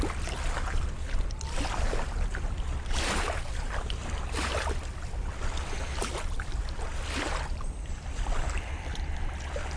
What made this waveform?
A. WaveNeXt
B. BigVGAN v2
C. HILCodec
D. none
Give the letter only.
D